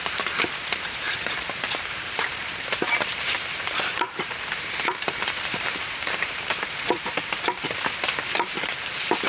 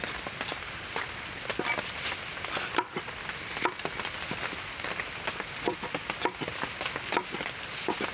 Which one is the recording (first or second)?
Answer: second